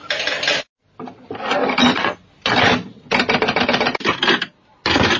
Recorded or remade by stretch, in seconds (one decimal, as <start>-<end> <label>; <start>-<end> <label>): 0.0-5.2 recorded